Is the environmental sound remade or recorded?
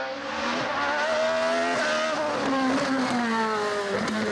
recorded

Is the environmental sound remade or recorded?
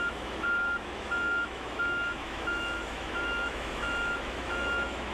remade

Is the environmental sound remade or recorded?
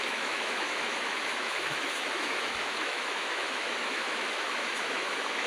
remade